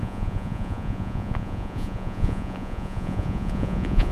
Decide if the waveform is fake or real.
fake